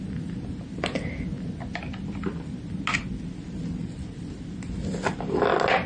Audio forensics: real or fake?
real